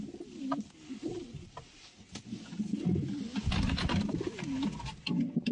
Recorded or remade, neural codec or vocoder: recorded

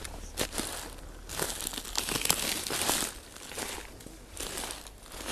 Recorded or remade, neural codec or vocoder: recorded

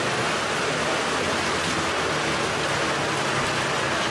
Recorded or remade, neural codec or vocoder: recorded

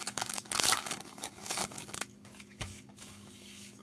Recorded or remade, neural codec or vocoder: remade, codec, DAC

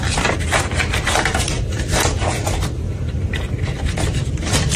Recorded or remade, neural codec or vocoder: remade, vocoder, BigVGAN v2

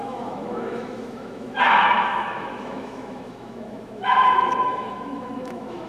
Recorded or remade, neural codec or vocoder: remade, autoencoder, DAC-VAE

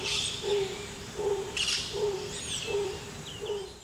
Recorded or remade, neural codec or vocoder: remade, vocoder, BigVGAN v2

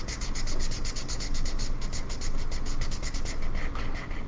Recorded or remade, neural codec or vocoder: recorded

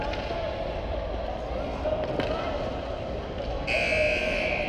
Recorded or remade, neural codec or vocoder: recorded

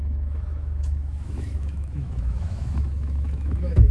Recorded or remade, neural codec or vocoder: remade, autoencoder, DAC-VAE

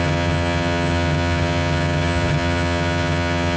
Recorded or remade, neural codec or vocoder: remade, vocoder, HiFi-GAN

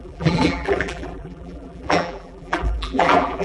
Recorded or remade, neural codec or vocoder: remade, vocoder, BigVGAN v2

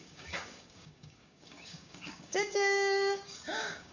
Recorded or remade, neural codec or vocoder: remade, codec, DAC